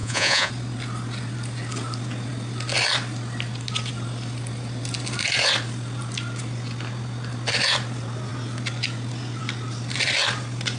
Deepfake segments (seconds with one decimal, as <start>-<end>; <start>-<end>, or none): 0.0-0.5